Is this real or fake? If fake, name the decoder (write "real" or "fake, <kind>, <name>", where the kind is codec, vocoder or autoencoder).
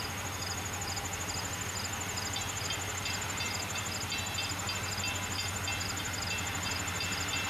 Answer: real